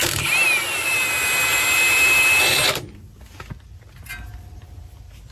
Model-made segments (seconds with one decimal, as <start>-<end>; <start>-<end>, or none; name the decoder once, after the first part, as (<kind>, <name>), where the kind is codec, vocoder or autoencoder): 0.0-3.2 (vocoder, BigVGAN v2)